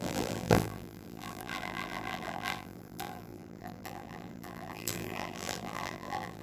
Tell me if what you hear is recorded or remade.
remade